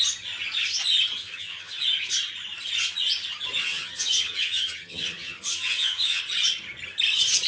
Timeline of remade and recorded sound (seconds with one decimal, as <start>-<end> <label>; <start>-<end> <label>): 0.0-1.2 recorded; 1.2-1.8 remade; 1.8-3.6 recorded; 3.6-6.2 remade; 6.2-7.5 recorded